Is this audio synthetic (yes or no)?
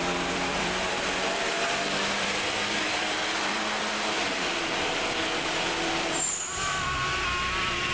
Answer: yes